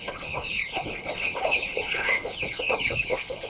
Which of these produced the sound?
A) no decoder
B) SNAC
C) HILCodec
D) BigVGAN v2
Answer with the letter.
C